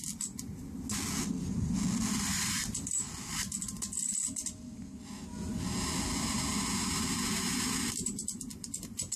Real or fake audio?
real